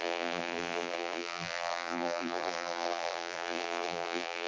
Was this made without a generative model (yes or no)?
no